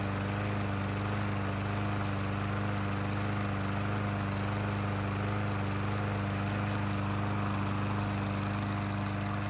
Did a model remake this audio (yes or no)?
no